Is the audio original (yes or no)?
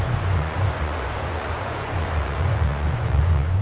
no